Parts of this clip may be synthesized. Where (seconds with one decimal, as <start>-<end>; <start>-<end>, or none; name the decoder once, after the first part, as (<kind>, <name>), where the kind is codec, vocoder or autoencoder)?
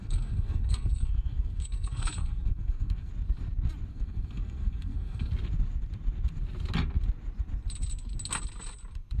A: 0.0-3.1 (codec, SNAC); 3.9-5.3